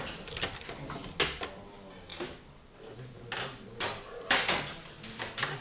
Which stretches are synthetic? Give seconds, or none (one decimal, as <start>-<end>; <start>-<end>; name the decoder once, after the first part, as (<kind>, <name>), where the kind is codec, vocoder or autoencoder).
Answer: none